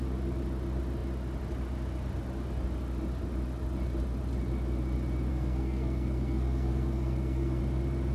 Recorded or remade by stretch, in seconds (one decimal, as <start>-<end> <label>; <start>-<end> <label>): 0.0-5.3 recorded; 5.3-7.6 remade; 7.6-8.1 recorded